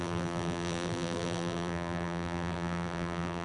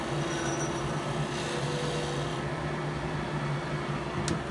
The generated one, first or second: first